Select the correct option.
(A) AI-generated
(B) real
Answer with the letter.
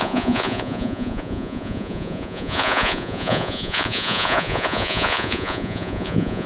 A